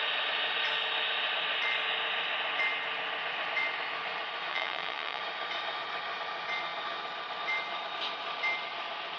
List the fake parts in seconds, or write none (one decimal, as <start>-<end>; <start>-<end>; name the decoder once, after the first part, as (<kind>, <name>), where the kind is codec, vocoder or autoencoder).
4.5-5.2 (vocoder, WaveNeXt)